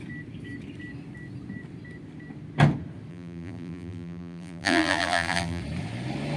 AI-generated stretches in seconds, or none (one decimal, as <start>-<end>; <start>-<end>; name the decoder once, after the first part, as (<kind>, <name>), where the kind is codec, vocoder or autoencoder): 3.1-5.6 (vocoder, BigVGAN v2)